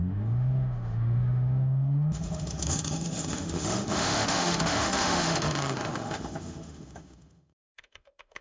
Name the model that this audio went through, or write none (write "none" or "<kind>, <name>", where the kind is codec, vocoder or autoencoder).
autoencoder, DAC-VAE